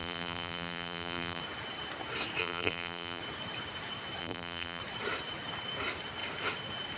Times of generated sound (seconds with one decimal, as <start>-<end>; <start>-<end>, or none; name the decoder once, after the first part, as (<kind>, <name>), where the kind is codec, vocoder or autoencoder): 0.0-1.4 (vocoder, BigVGAN v2); 2.4-3.2; 4.2-4.8